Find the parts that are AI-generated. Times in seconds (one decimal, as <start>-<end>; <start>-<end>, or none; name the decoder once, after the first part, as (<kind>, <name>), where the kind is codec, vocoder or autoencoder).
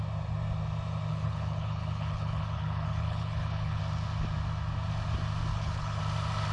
1.1-3.8 (codec, HILCodec); 5.5-6.0